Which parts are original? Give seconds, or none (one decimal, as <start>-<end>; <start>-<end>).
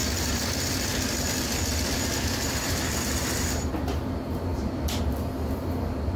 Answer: 3.7-4.5; 5.0-6.2